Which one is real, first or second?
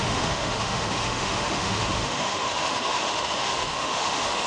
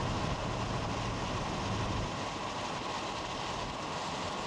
second